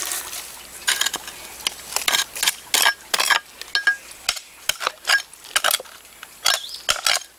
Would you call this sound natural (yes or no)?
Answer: yes